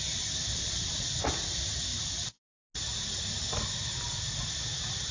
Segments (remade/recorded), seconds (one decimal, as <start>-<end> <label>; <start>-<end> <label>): 0.0-0.5 recorded; 0.5-1.1 remade; 1.1-5.1 recorded